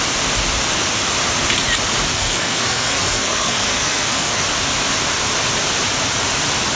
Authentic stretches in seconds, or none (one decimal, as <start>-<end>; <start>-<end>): 0.0-2.1; 4.4-6.8